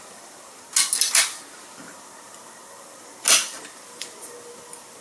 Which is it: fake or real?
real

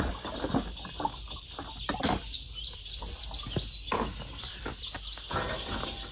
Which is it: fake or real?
fake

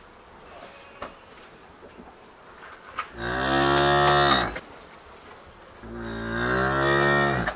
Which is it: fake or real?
real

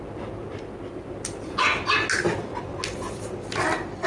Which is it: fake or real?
real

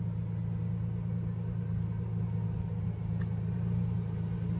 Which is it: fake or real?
real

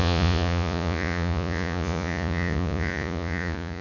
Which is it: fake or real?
fake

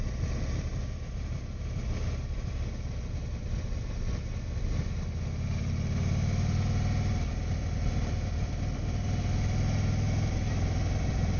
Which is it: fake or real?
real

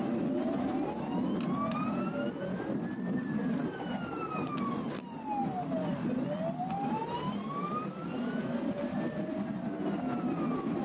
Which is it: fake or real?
real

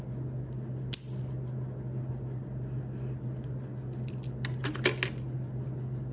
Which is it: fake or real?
real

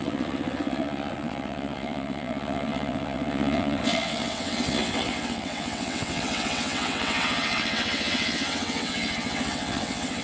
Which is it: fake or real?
fake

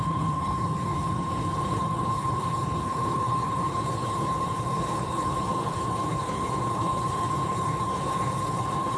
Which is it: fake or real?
fake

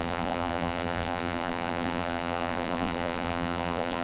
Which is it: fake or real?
fake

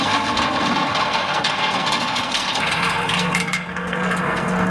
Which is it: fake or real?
fake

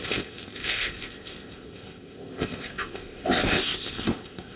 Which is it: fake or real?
fake